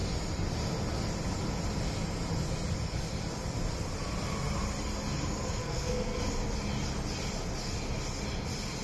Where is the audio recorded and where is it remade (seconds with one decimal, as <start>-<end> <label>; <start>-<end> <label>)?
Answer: 0.0-5.6 recorded; 5.6-6.2 remade; 6.2-8.8 recorded